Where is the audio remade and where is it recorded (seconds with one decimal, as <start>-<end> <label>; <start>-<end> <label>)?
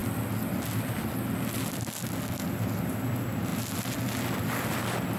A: 0.0-5.2 recorded